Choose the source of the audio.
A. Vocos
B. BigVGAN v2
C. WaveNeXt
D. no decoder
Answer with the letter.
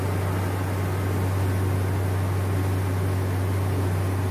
D